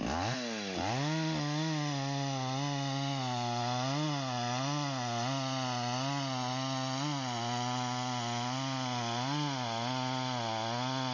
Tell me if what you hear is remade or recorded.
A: recorded